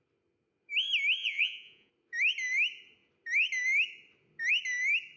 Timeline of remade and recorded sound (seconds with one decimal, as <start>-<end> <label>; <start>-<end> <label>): 0.0-1.2 recorded; 1.2-1.9 remade; 1.9-5.2 recorded